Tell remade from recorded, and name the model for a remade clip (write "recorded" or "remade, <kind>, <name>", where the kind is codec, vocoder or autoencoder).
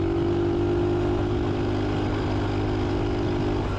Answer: recorded